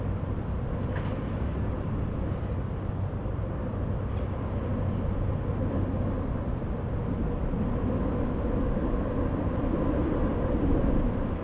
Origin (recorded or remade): recorded